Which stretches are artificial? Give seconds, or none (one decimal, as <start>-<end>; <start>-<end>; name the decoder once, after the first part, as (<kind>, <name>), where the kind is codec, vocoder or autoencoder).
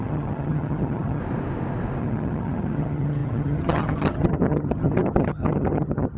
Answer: 0.0-1.2 (vocoder, HiFi-GAN); 2.0-6.2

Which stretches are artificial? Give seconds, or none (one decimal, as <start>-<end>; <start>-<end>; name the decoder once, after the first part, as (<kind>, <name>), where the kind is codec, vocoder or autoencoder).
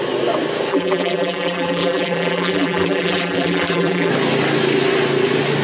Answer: 0.7-4.1 (vocoder, BigVGAN v2)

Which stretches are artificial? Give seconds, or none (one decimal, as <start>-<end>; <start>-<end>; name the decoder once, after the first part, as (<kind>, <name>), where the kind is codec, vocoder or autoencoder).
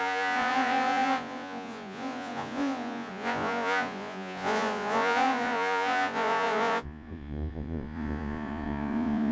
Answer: 0.0-9.3 (vocoder, Vocos)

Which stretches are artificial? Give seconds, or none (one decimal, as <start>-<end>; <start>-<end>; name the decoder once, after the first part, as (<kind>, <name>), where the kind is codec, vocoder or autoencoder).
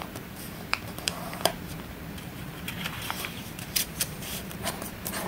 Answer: 0.0-5.3 (vocoder, BigVGAN v2)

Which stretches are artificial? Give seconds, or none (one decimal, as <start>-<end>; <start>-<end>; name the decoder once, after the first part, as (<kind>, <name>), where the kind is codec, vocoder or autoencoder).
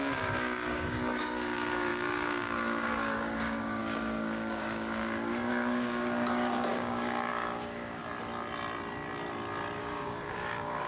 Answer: 0.0-8.0 (codec, DAC); 9.8-10.9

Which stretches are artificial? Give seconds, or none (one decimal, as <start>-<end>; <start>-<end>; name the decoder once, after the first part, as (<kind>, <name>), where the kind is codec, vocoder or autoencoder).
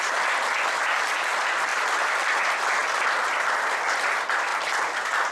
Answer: none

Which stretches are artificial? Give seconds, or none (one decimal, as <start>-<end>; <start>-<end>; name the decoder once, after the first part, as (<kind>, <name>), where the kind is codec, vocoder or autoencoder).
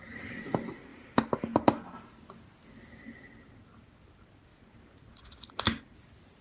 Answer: none